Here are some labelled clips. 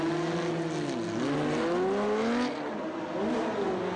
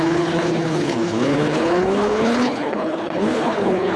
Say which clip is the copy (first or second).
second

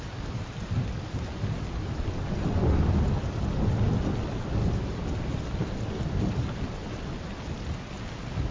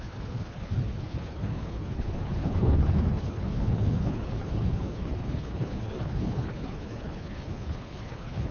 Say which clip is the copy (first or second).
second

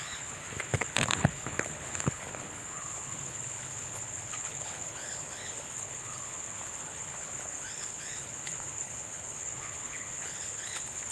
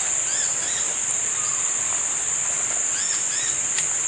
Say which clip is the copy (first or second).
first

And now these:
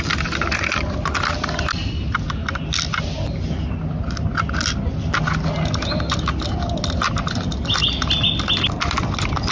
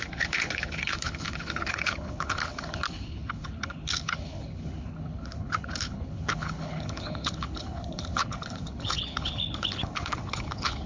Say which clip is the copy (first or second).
second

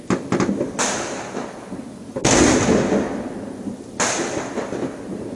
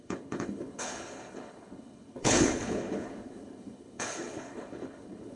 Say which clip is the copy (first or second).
second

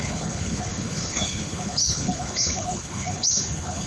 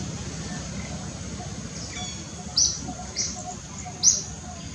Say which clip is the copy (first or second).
first